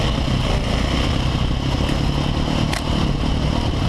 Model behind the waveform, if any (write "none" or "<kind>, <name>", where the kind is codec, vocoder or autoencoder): none